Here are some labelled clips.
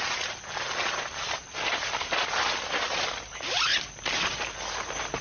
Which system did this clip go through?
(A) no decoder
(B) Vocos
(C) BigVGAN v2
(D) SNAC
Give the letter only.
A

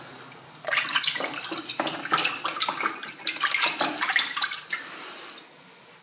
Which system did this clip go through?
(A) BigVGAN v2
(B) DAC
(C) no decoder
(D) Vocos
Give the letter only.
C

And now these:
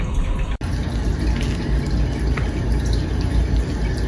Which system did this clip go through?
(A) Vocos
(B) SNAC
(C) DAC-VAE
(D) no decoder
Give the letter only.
D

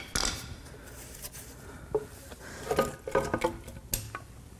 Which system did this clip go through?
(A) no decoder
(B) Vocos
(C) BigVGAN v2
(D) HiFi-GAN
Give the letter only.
A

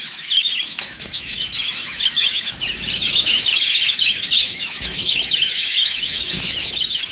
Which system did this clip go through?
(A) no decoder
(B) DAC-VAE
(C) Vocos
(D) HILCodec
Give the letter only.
B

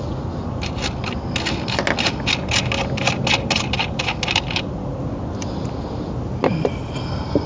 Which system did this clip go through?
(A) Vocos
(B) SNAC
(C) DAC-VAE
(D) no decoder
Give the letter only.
D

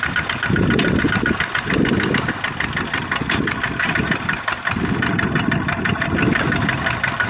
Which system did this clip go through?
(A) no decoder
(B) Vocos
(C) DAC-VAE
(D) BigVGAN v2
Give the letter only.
A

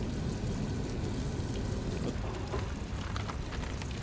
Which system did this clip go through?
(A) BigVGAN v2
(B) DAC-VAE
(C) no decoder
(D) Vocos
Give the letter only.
C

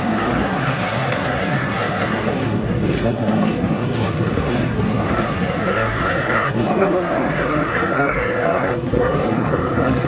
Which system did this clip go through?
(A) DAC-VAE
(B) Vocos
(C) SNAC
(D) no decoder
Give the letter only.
C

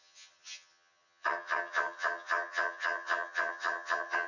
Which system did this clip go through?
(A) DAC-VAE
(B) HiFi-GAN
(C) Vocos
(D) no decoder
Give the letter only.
B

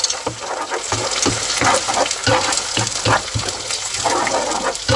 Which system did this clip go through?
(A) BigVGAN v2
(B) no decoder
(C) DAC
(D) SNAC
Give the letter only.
B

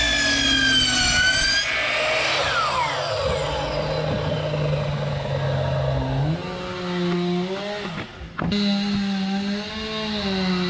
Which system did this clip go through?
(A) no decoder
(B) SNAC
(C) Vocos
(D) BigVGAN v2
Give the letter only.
A